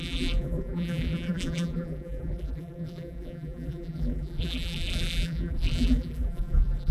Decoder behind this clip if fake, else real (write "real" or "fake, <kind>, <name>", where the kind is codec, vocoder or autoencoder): fake, vocoder, BigVGAN v2